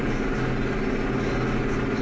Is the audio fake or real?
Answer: real